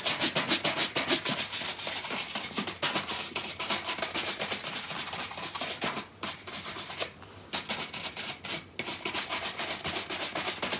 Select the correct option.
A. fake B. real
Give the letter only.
B